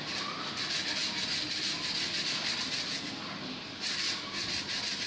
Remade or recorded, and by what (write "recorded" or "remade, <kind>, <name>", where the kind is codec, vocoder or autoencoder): recorded